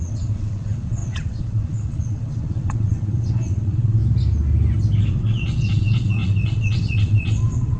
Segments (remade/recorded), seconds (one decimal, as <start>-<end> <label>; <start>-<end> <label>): 0.0-4.0 remade; 4.0-5.1 recorded; 5.1-7.8 remade